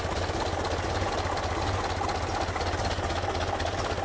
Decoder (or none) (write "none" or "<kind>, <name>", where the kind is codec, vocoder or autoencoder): none